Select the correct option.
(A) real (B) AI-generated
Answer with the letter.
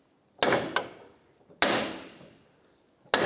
A